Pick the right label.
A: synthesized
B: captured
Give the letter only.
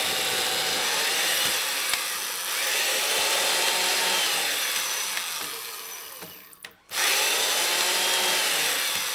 B